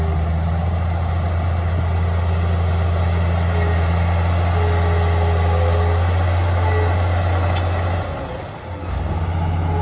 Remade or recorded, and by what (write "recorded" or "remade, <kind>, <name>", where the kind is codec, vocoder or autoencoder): recorded